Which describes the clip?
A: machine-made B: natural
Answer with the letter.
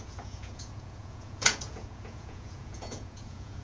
A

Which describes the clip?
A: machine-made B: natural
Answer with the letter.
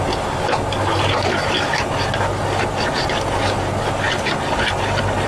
B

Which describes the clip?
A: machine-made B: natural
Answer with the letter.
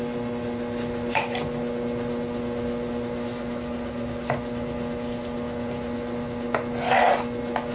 B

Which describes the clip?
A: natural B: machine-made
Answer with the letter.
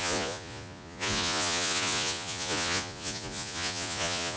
B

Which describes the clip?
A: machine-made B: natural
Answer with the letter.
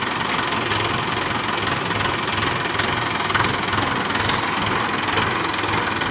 B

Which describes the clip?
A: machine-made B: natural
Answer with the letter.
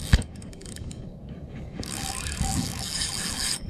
A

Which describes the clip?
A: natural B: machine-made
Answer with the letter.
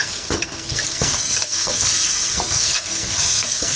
B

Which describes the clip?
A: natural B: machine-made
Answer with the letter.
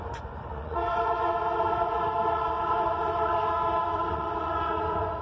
B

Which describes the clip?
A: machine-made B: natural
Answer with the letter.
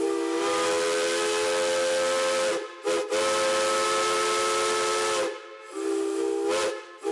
B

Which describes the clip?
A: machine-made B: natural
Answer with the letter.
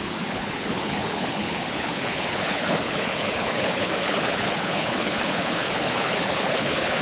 A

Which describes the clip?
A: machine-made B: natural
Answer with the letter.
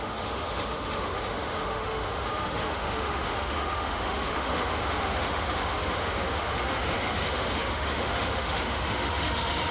A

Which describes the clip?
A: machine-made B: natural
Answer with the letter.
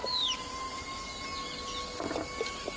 B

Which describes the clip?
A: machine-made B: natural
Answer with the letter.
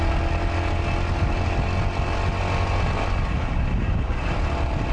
B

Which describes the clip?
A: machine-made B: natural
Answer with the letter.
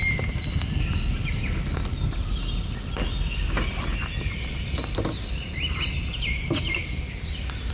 A